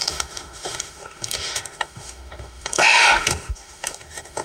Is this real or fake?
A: fake